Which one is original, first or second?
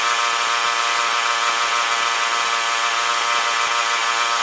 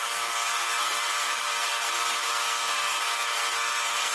first